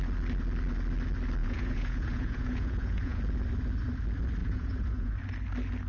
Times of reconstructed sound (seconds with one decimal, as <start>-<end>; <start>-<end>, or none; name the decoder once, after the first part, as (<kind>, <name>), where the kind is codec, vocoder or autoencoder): 1.4-3.2 (vocoder, Vocos); 4.4-5.1